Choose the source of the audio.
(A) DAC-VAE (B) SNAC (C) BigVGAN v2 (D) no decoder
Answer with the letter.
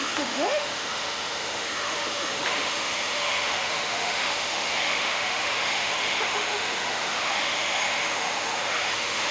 A